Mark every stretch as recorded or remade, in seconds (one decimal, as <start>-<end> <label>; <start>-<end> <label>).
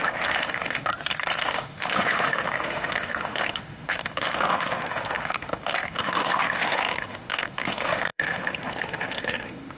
0.0-0.9 remade; 0.9-1.4 recorded; 1.4-9.8 remade